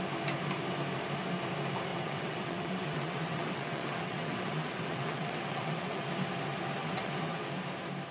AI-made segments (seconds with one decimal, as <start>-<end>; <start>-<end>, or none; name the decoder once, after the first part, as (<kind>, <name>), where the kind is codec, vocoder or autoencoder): 1.9-6.0 (vocoder, WaveNeXt); 6.8-7.4